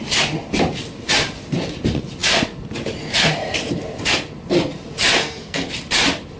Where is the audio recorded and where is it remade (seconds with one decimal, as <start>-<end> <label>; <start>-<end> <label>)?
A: 0.0-5.2 recorded; 5.2-5.7 remade; 5.7-6.4 recorded